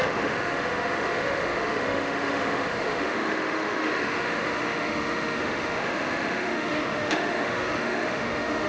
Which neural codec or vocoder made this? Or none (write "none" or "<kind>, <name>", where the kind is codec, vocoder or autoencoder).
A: autoencoder, DAC-VAE